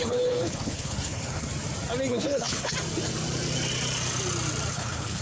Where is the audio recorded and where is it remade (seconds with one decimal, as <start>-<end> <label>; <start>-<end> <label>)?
0.0-1.5 remade; 1.5-2.1 recorded; 2.1-2.7 remade; 2.7-4.7 recorded; 4.7-5.2 remade